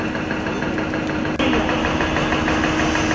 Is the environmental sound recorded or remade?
recorded